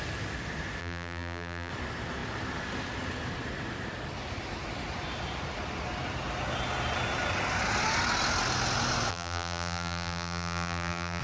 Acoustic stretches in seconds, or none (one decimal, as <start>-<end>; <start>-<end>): 0.0-0.8; 1.7-9.1